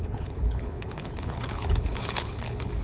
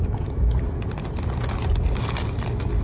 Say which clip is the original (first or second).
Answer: second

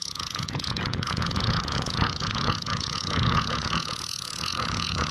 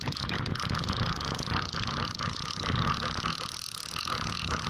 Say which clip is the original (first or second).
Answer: second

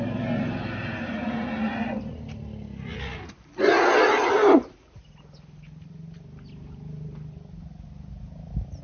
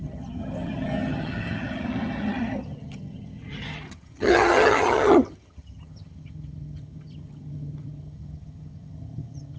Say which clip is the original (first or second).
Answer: first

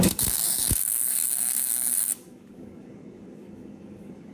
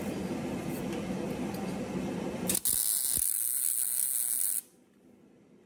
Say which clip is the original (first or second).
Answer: second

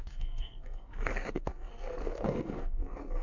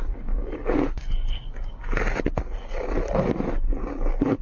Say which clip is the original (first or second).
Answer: second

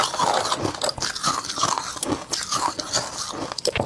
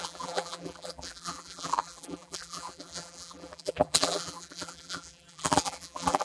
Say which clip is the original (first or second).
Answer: first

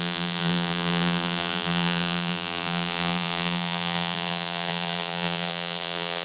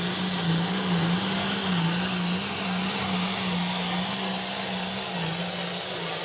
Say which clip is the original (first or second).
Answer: second